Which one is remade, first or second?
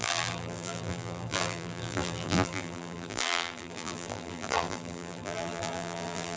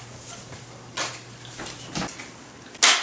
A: first